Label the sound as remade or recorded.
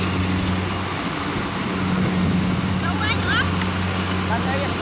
recorded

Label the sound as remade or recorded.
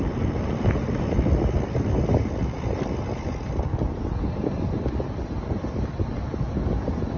recorded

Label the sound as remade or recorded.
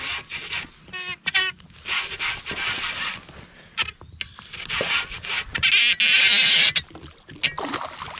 recorded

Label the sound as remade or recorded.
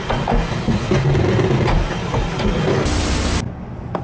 recorded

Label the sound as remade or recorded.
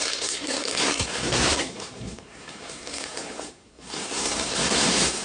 remade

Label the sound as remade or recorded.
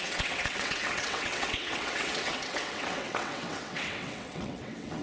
remade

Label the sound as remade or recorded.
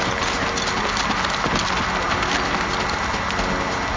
recorded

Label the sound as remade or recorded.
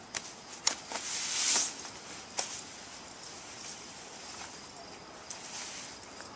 recorded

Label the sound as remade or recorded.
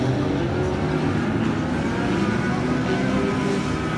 recorded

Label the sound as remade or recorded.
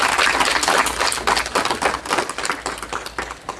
recorded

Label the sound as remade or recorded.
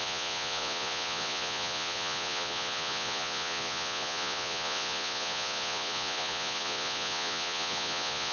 remade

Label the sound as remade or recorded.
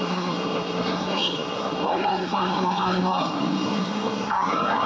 remade